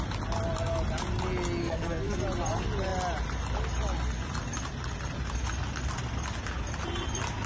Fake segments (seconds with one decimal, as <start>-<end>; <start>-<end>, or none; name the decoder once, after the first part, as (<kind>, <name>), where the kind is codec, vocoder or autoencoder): 1.6-2.2 (codec, SNAC)